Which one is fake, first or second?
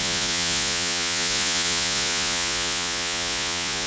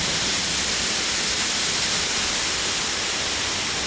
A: first